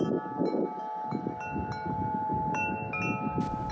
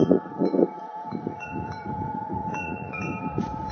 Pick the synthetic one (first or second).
second